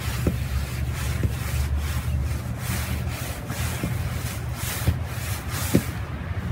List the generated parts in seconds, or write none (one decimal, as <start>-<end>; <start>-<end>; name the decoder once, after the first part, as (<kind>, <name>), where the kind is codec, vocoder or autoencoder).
none